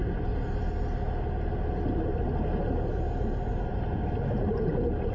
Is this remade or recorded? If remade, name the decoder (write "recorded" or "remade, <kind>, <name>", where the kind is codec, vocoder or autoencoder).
recorded